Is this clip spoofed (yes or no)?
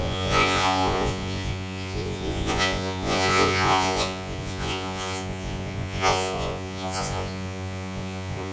yes